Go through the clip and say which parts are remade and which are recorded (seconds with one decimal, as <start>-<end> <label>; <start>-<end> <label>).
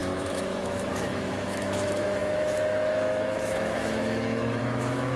0.0-5.2 remade